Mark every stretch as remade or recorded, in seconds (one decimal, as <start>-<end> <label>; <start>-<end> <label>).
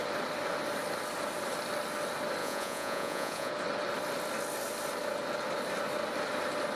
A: 0.0-2.4 recorded; 2.4-3.5 remade; 3.5-6.8 recorded